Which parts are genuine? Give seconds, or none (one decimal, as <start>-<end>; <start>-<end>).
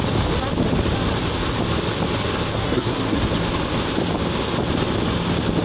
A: 0.0-2.5; 3.2-5.6